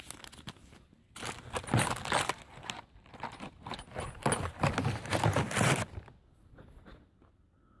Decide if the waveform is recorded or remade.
recorded